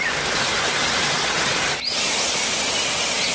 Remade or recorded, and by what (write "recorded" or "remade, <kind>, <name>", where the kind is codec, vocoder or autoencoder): recorded